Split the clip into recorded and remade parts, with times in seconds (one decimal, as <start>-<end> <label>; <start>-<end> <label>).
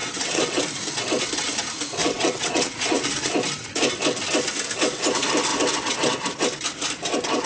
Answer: 0.0-0.6 remade; 0.6-2.0 recorded; 2.0-3.3 remade; 3.3-7.5 recorded